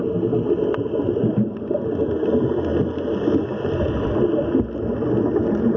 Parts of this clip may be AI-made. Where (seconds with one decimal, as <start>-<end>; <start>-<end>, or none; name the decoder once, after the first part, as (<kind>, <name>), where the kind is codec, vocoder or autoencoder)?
none